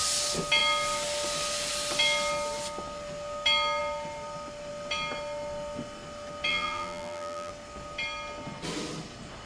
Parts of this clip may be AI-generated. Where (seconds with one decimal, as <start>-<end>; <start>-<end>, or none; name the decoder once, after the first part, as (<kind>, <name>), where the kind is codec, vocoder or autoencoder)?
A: 6.5-7.5 (vocoder, BigVGAN v2)